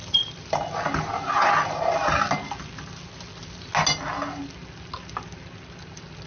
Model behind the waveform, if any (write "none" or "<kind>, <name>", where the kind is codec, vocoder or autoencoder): none